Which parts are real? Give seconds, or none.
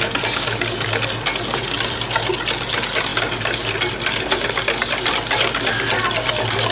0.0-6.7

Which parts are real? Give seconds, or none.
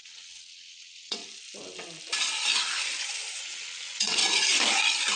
1.2-3.4; 4.2-5.2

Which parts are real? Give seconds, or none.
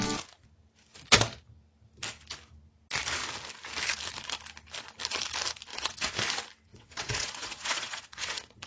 0.0-5.7; 6.2-6.7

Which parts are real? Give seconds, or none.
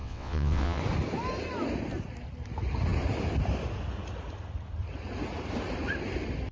0.8-6.5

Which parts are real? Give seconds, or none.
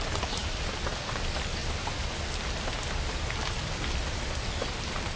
0.0-5.2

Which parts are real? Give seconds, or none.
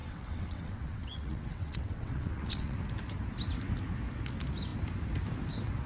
2.8-5.9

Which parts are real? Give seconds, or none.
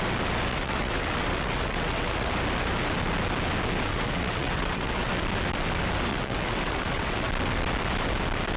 0.0-0.5; 2.3-3.8; 5.1-6.1; 7.3-8.6